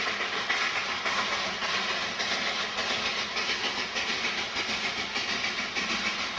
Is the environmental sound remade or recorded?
recorded